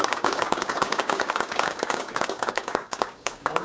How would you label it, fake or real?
fake